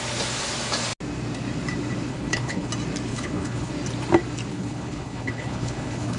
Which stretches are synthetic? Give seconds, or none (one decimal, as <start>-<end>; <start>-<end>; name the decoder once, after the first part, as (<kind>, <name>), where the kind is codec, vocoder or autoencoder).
2.1-2.7 (codec, HILCodec); 3.1-3.7; 4.5-6.2